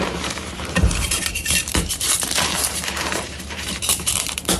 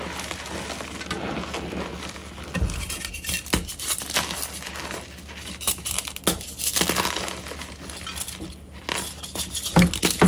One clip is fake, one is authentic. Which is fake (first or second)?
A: first